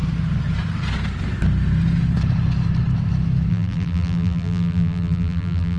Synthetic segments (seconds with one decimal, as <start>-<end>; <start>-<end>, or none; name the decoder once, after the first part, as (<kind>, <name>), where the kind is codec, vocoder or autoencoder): 3.5-5.8 (vocoder, BigVGAN v2)